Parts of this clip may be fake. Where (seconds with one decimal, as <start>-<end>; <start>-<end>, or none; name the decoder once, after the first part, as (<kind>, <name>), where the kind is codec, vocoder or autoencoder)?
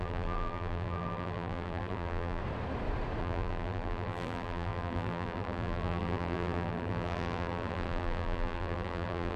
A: 0.0-2.4 (vocoder, BigVGAN v2); 3.2-9.4